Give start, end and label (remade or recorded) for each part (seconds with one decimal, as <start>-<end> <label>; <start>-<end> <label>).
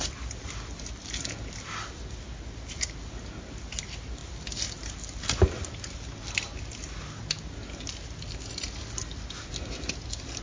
0.0-10.4 recorded